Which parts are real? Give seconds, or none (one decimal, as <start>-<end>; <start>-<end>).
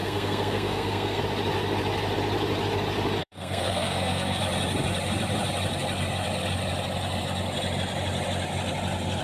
1.2-3.2; 4.4-9.2